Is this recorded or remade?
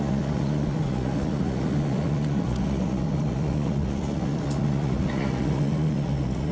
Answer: remade